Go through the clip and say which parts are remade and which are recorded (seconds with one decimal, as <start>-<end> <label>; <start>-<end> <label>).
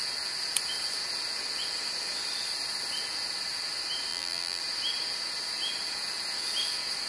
0.0-4.1 recorded; 4.1-4.6 remade; 4.6-7.1 recorded